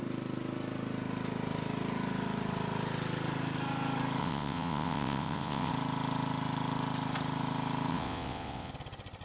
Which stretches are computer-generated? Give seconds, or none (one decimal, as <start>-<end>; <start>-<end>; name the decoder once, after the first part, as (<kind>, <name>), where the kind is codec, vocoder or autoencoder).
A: 4.2-5.7 (vocoder, WaveNeXt); 7.9-8.7